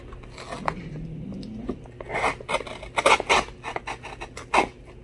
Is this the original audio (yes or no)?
yes